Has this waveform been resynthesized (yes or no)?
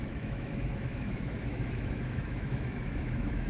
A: yes